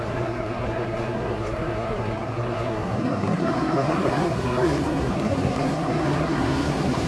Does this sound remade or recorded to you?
remade